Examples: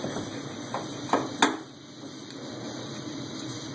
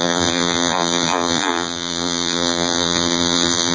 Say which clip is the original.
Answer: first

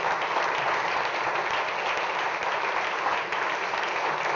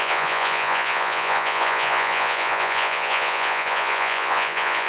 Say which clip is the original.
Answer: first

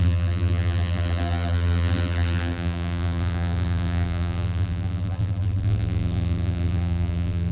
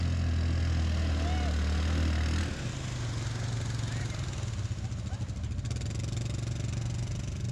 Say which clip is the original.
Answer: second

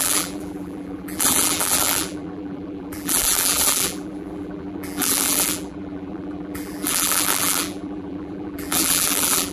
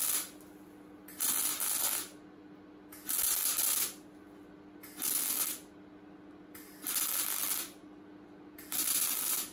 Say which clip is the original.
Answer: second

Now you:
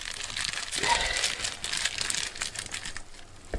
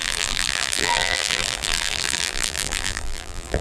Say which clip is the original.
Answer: first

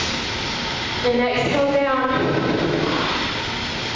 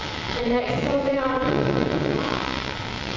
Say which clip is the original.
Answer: first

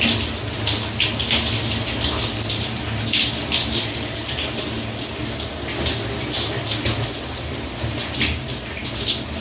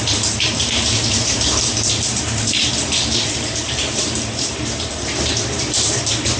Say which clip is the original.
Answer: first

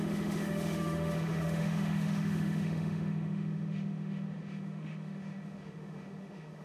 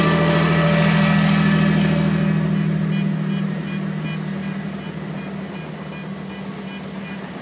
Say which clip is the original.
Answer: second